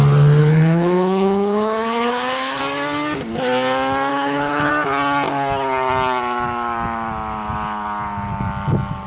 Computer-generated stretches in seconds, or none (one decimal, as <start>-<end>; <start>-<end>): 0.4-2.6; 4.1-4.7